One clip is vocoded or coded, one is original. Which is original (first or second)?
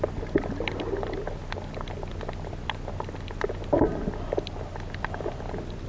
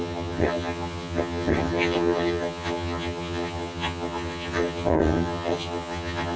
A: first